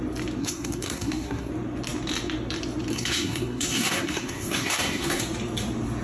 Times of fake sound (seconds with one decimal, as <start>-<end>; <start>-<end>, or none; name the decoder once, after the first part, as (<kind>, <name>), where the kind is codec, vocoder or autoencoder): 0.4-1.5 (codec, SNAC); 2.9-5.2